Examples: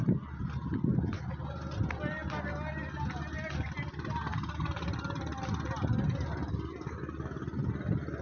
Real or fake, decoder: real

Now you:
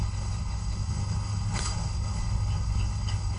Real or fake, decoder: fake, codec, HILCodec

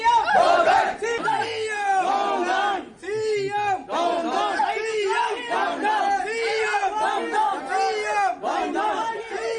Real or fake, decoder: real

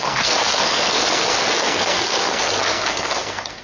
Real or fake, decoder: fake, codec, SNAC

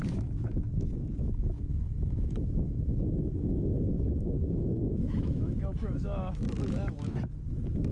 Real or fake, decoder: fake, autoencoder, DAC-VAE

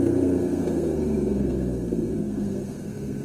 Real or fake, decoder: fake, codec, SNAC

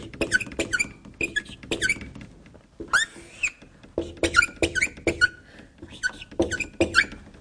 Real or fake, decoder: real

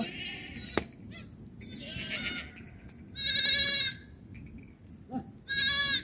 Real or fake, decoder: real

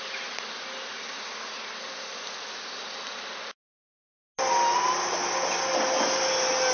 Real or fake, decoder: real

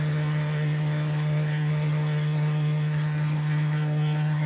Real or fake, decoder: fake, codec, SNAC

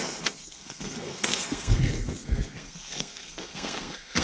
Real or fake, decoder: fake, codec, SNAC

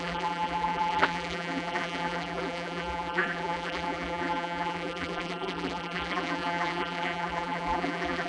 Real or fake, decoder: fake, vocoder, BigVGAN v2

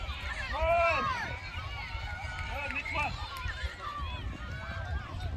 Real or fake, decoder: fake, vocoder, BigVGAN v2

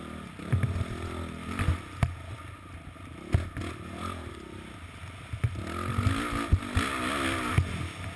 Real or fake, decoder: real